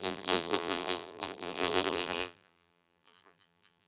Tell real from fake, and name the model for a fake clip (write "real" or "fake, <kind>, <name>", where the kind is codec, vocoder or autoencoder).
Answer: fake, vocoder, BigVGAN v2